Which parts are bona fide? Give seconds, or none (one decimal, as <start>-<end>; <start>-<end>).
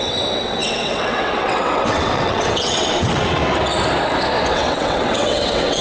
3.4-4.5